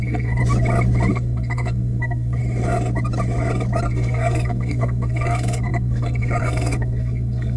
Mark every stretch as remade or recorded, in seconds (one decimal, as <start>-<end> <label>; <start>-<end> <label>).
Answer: 0.0-0.4 remade; 0.4-1.1 recorded; 1.1-2.4 remade; 2.4-3.8 recorded; 3.8-7.6 remade